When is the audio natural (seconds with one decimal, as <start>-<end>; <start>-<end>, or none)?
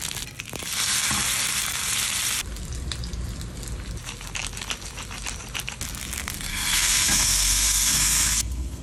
0.0-6.5